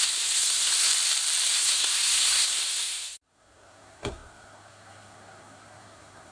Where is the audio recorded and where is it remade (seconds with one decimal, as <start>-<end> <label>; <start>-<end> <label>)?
0.0-0.9 remade; 0.9-1.5 recorded; 1.5-6.3 remade